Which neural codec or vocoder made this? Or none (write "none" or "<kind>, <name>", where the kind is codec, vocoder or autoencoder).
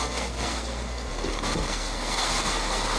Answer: codec, SNAC